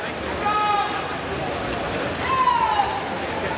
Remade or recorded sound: recorded